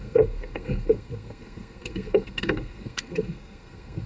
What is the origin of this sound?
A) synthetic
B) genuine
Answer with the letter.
A